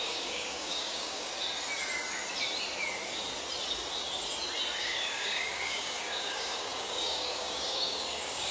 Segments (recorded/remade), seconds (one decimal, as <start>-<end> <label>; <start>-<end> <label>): 0.0-1.3 remade; 1.3-4.8 recorded; 4.8-8.5 remade